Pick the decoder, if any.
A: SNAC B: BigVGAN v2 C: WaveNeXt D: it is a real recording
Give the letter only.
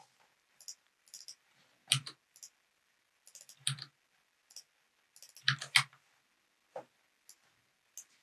D